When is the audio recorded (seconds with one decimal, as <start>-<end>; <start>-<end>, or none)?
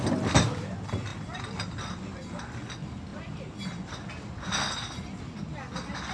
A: 0.0-6.1